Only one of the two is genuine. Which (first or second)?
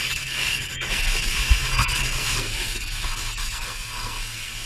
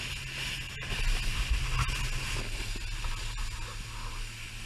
second